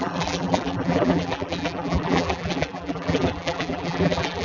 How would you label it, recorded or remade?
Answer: remade